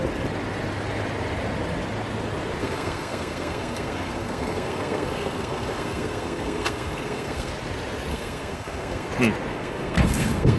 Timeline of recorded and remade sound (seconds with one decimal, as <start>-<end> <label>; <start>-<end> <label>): 0.0-2.6 recorded; 2.6-7.5 remade; 7.5-8.1 recorded; 8.1-9.1 remade; 9.1-9.5 recorded; 9.5-10.6 remade